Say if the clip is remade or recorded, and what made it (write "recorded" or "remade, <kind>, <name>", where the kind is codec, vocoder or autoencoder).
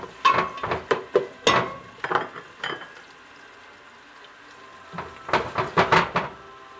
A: recorded